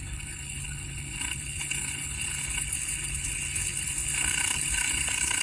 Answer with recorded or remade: remade